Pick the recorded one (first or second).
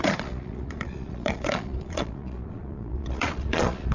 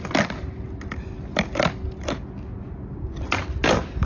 second